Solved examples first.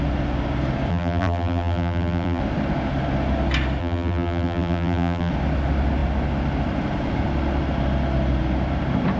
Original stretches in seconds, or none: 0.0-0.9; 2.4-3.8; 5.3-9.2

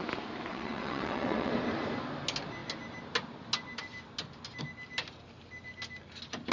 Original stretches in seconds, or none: 0.0-0.5; 1.5-6.5

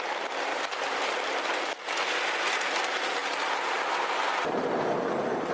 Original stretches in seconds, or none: 0.0-0.5; 1.0-5.5